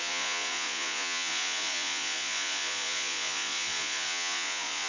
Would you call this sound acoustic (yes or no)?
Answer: no